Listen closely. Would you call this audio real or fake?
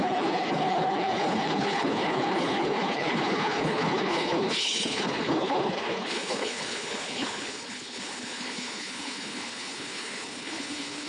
fake